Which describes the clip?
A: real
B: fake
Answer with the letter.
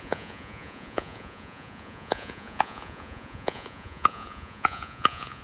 B